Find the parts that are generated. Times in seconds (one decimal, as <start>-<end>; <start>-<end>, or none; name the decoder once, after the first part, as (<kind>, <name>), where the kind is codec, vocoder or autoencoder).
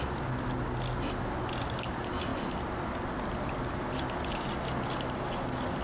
none